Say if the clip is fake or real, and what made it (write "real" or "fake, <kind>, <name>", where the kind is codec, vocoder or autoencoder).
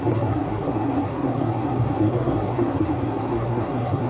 fake, codec, SNAC